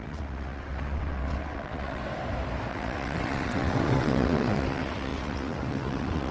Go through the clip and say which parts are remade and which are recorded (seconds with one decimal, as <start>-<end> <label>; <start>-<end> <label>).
0.0-2.0 remade; 2.0-2.7 recorded; 2.7-6.3 remade